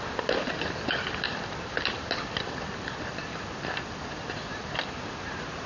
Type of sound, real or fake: fake